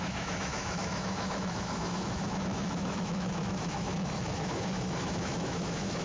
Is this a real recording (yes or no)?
no